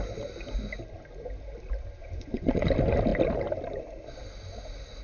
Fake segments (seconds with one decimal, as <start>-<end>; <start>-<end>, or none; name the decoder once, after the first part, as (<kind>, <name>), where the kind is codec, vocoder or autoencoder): 2.0-2.7 (vocoder, Vocos)